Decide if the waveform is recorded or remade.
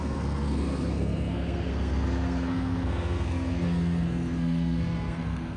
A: remade